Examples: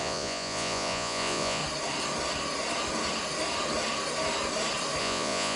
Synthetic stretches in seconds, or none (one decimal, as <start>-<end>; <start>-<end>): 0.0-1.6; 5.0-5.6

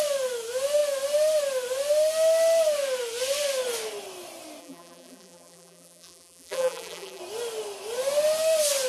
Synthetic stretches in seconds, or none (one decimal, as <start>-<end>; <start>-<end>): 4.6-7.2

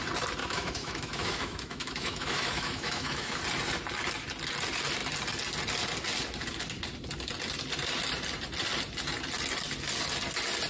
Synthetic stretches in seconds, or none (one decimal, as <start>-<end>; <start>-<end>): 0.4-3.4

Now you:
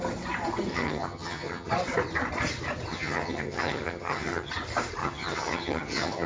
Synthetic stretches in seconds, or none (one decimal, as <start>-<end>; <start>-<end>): 0.7-1.7; 2.9-4.5; 5.0-6.3